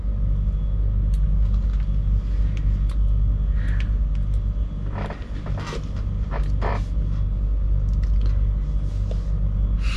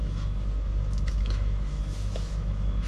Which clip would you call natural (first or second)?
first